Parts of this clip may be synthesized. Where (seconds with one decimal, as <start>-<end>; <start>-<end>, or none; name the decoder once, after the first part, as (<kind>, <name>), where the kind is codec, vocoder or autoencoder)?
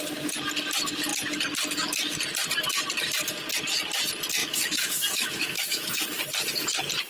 4.4-6.2 (autoencoder, DAC-VAE)